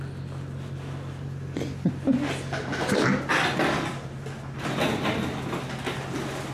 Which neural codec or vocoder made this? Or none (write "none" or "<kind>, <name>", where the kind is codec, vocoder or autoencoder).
none